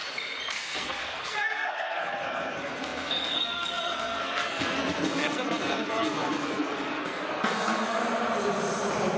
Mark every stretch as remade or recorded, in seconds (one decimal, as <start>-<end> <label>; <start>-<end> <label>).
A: 0.0-0.5 recorded; 0.5-8.0 remade; 8.0-9.2 recorded